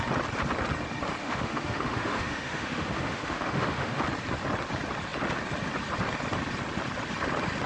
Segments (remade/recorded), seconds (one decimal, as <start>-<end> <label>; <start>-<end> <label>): 0.0-1.2 recorded; 1.2-4.0 remade; 4.0-7.7 recorded